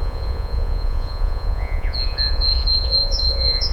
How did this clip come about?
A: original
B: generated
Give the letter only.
B